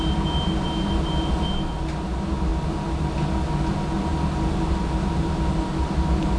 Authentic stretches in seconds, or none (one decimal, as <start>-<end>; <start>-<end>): 0.0-2.5; 3.1-6.4